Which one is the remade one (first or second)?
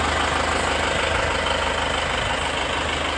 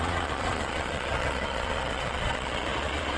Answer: second